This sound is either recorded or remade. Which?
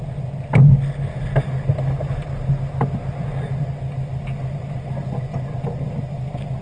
recorded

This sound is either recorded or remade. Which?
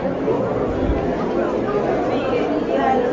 recorded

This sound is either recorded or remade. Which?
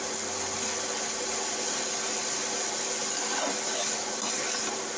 recorded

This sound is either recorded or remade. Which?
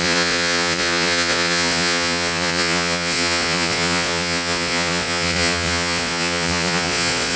remade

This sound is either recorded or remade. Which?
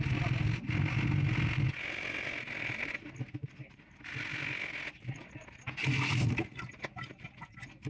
recorded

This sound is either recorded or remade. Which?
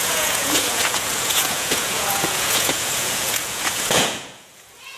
remade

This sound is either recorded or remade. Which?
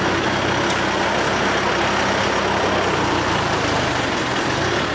recorded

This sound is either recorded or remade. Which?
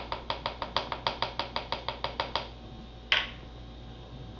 recorded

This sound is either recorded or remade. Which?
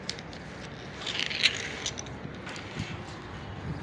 recorded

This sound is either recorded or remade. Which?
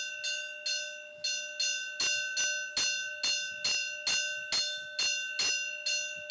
recorded